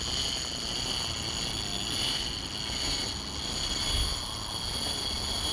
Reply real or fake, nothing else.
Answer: real